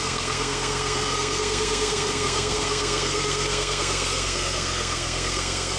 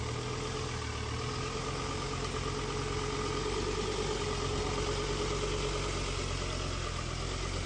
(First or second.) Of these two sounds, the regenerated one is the first